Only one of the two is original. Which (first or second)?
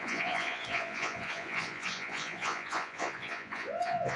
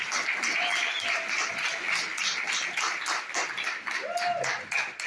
second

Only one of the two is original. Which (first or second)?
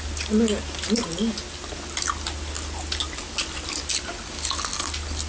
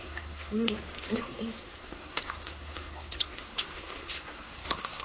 first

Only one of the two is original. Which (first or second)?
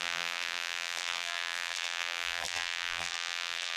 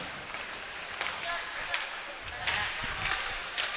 second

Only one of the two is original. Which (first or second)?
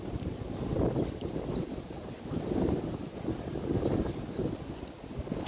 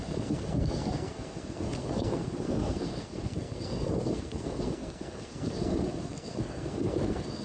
first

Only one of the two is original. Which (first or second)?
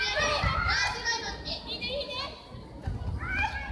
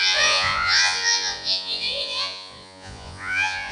first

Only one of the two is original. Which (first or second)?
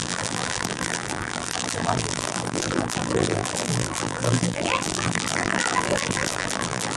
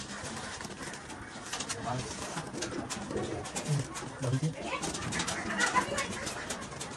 second